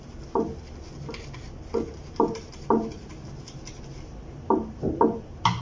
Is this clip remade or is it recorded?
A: recorded